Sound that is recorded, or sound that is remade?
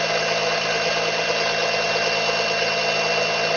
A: recorded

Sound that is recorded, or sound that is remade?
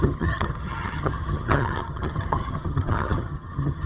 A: remade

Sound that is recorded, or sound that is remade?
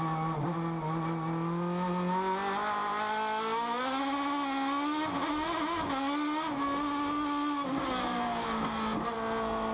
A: recorded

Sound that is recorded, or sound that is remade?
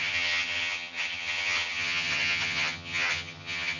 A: remade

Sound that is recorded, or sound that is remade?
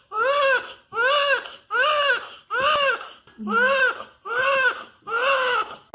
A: recorded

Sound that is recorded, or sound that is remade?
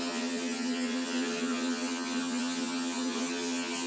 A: remade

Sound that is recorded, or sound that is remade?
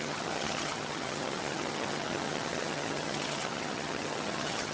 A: remade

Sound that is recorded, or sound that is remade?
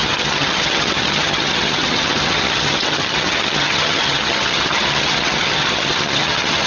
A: remade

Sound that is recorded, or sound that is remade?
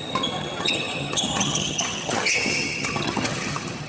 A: remade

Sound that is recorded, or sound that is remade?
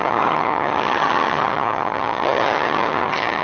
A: remade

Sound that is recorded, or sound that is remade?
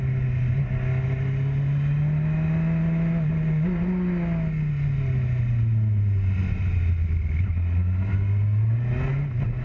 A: recorded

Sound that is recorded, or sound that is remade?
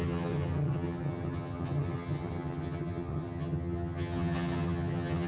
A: remade